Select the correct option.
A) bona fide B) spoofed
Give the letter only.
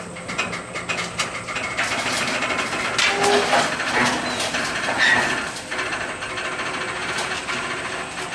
A